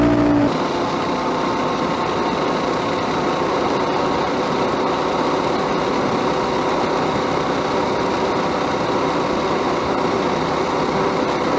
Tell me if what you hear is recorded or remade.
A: recorded